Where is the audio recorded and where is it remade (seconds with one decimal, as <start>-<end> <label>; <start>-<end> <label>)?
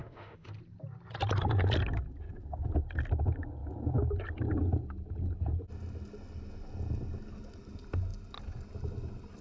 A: 0.0-0.5 remade; 0.5-9.4 recorded